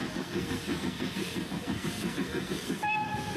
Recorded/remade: remade